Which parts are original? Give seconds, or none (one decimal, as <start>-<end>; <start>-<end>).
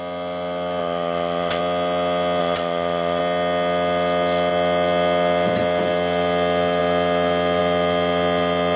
0.0-0.8; 1.6-2.4; 3.2-8.8